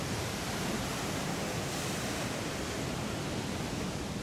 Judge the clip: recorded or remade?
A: recorded